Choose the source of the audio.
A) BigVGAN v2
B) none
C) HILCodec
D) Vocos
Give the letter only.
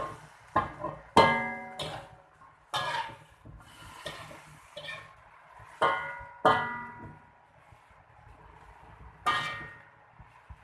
B